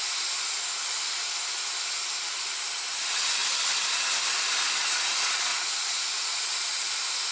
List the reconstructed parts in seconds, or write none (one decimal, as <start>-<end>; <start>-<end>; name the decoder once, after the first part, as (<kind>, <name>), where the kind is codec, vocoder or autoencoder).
5.5-6.8 (vocoder, Vocos)